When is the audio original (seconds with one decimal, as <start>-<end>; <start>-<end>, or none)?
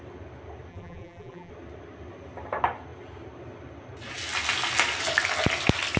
0.0-0.7; 1.5-6.0